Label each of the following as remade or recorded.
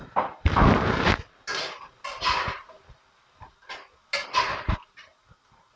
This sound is recorded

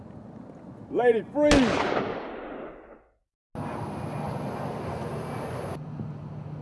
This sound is recorded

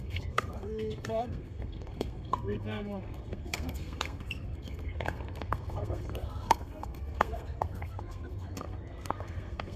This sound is remade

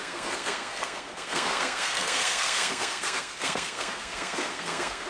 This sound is remade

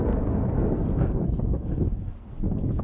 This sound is remade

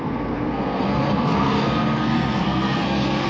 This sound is remade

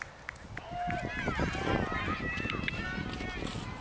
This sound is recorded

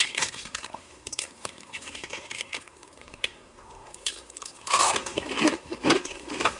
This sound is remade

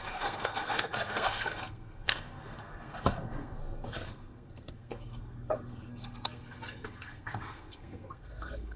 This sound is remade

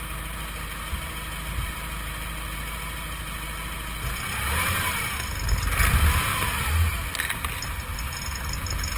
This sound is recorded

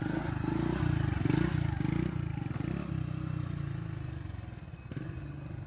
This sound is recorded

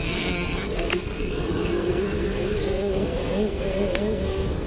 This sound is remade